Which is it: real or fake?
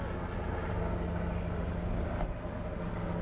real